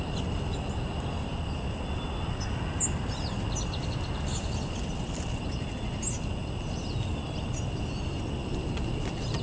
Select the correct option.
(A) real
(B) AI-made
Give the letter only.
A